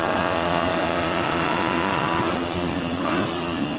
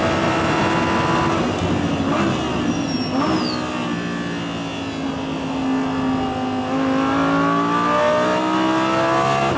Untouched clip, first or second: second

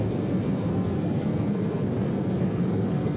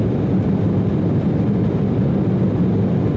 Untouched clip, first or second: second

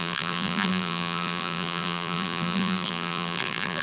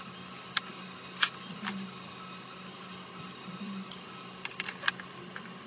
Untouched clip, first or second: second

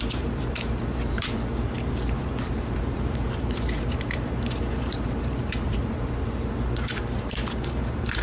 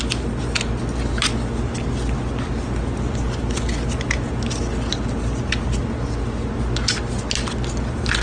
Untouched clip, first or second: second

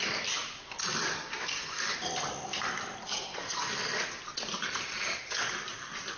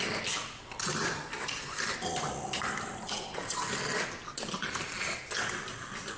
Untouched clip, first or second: second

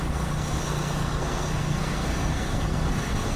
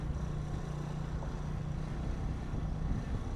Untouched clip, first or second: second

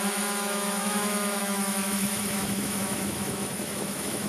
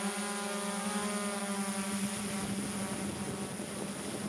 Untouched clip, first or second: second